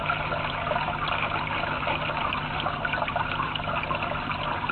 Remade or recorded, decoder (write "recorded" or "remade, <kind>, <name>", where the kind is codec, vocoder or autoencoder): recorded